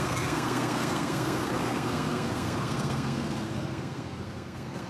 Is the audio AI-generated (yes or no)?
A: yes